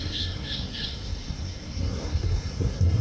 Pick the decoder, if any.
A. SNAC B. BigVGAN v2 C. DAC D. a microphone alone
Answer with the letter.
A